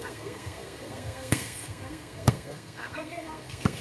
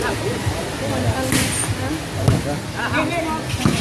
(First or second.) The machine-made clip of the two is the first